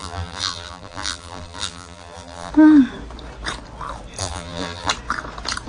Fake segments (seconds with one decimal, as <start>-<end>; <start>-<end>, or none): 0.0-2.5; 4.2-4.9